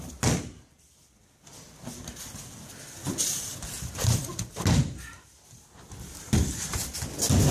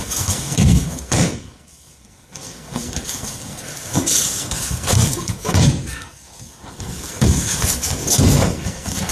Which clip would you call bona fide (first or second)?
first